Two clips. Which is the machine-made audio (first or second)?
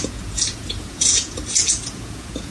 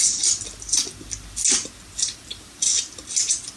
first